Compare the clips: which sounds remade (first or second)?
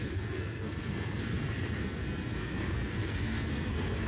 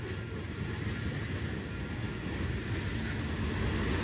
first